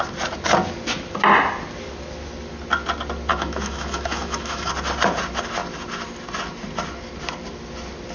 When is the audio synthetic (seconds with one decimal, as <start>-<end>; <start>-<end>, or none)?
3.3-4.7